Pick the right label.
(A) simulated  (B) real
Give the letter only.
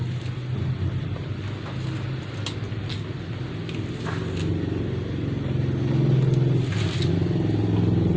B